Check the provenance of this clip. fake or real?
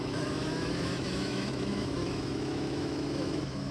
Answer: fake